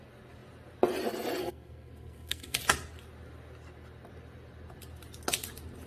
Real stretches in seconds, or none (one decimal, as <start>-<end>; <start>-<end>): 0.0-1.4; 2.6-5.9